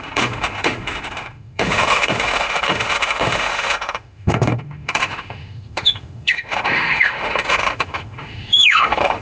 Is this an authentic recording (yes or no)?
no